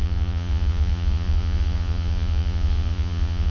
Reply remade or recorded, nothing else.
remade